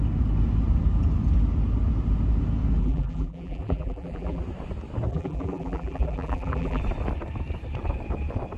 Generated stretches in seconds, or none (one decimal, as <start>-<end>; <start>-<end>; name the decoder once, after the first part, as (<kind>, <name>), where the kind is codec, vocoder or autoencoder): 2.8-4.4 (vocoder, BigVGAN v2); 5.1-6.8